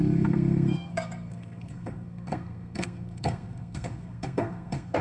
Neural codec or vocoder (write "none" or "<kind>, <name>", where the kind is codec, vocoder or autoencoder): codec, SNAC